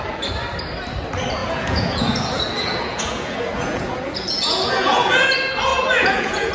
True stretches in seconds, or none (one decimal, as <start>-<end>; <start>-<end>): 0.0-1.4; 5.3-5.7